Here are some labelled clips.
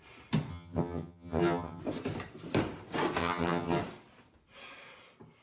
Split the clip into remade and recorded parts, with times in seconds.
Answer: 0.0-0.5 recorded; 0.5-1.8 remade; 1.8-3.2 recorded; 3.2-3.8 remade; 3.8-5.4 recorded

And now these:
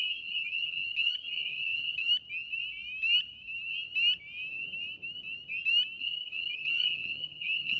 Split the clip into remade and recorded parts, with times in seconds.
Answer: 0.0-2.1 remade; 2.1-6.0 recorded; 6.0-7.8 remade

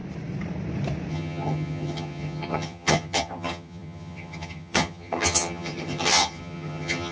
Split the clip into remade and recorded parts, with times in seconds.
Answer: 0.0-1.1 recorded; 1.1-7.1 remade

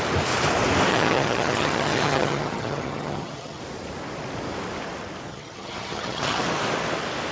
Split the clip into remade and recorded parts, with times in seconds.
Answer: 0.0-0.9 recorded; 0.9-3.6 remade; 3.6-5.3 recorded; 5.3-6.4 remade; 6.4-7.3 recorded

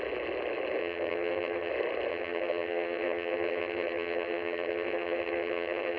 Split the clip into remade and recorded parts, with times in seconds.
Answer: 0.0-0.8 recorded; 0.8-1.7 remade; 1.7-2.1 recorded; 2.1-6.0 remade

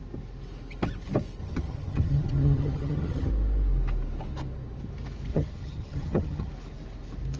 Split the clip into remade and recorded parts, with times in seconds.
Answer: 0.0-1.4 recorded; 1.4-3.3 remade; 3.3-5.3 recorded; 5.3-6.5 remade; 6.5-7.4 recorded

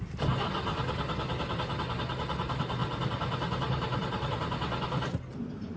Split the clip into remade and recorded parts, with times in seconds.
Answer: 0.0-5.8 recorded